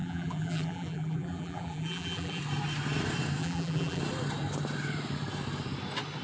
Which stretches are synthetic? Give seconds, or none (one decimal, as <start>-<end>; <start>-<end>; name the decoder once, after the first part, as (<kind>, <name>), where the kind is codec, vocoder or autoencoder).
0.0-2.4 (vocoder, BigVGAN v2); 3.4-4.0